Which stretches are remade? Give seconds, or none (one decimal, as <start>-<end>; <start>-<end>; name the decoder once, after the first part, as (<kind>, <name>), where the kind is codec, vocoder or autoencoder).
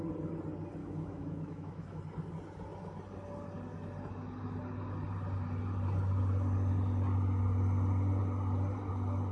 0.8-2.0 (autoencoder, DAC-VAE)